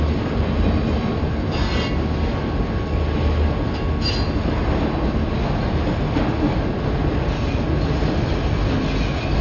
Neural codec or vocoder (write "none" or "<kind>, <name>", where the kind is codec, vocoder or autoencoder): none